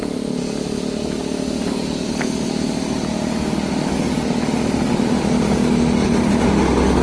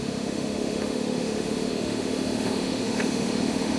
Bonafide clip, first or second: first